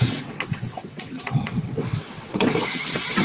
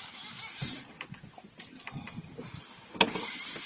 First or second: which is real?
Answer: second